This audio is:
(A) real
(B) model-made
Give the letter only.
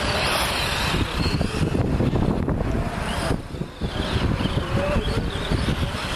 A